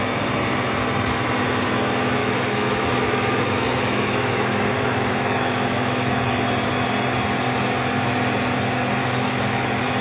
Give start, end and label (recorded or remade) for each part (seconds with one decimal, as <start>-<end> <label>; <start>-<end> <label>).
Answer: 0.0-2.2 recorded; 2.2-6.3 remade; 6.3-9.0 recorded; 9.0-10.0 remade